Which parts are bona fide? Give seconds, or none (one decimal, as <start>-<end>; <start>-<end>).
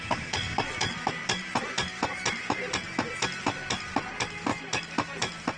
0.0-5.6